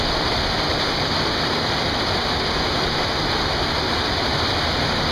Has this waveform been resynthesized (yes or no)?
no